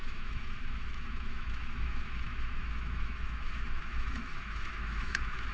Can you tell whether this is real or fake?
fake